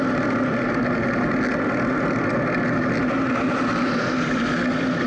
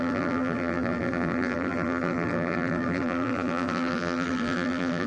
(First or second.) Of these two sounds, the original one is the first